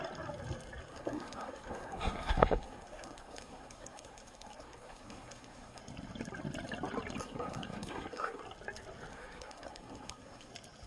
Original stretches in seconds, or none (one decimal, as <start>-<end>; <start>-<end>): 0.0-0.9; 5.8-7.2; 8.4-9.1; 10.5-10.9